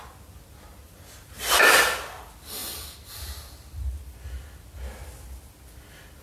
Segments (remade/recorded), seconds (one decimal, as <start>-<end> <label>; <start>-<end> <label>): 0.0-6.2 recorded